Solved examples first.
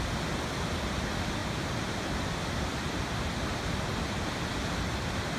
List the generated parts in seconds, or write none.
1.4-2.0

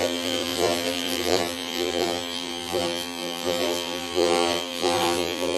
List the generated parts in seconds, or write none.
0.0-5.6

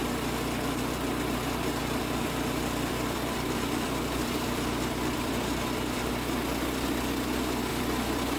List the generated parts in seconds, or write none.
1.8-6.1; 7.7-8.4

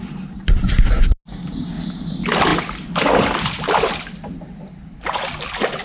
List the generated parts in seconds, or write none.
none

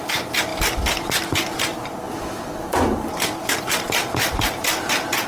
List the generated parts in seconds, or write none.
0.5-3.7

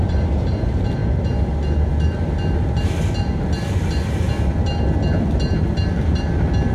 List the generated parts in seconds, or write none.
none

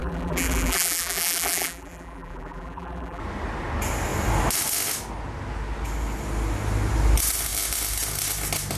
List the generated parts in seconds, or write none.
0.0-3.2